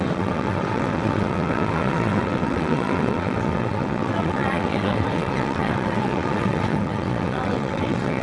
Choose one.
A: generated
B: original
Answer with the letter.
A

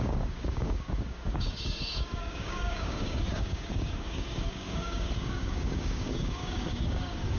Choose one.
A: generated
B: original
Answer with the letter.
A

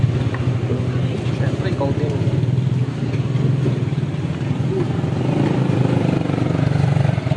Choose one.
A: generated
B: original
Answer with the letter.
B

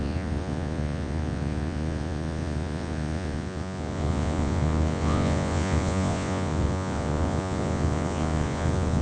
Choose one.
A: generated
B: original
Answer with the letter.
A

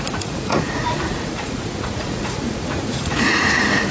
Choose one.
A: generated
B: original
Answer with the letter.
A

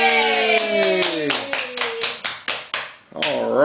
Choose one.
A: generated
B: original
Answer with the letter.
B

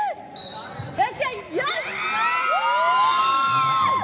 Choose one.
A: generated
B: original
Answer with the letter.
B